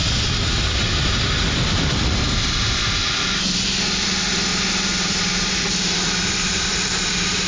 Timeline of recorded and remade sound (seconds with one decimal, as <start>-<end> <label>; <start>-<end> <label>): 0.0-4.5 recorded; 4.5-7.1 remade; 7.1-7.5 recorded